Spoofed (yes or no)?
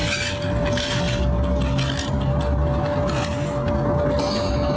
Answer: no